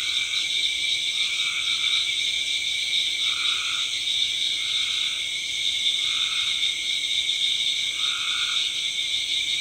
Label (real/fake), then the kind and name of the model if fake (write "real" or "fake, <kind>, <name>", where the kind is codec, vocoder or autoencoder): real